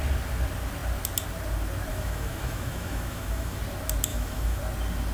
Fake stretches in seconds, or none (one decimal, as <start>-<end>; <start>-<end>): 1.9-3.6; 4.1-4.6